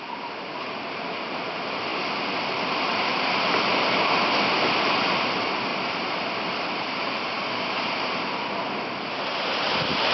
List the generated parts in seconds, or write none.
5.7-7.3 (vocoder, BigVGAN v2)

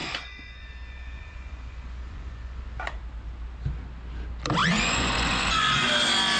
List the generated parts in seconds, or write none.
0.0-2.6 (vocoder, Vocos); 4.6-5.9

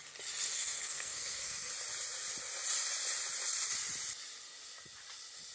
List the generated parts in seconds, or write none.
0.5-1.7 (codec, SNAC)

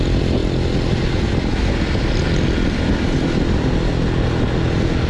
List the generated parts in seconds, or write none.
none